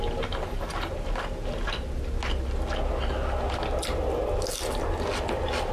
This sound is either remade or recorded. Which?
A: recorded